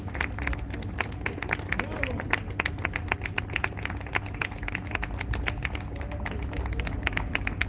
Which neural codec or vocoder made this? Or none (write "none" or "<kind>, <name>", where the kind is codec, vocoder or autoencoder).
none